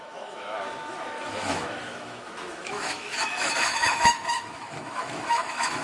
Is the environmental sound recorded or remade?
remade